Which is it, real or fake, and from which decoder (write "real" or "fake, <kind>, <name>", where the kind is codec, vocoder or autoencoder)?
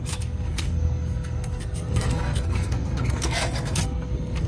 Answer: fake, codec, SNAC